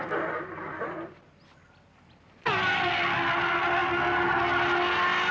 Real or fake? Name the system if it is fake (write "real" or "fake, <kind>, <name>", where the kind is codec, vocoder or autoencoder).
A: real